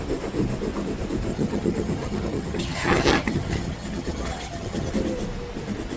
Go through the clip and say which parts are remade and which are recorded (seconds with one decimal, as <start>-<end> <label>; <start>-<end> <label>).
0.0-1.3 recorded; 1.3-4.9 remade; 4.9-6.0 recorded